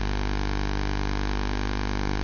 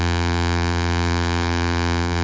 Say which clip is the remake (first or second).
second